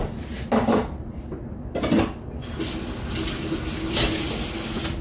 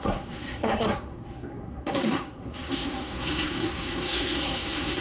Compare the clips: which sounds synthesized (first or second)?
second